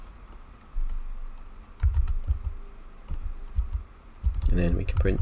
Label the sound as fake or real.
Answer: real